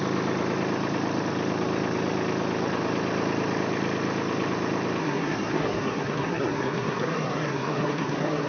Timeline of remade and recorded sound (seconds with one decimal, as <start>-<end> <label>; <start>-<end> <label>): 0.0-5.0 recorded; 5.0-8.5 remade